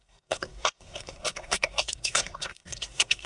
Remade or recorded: remade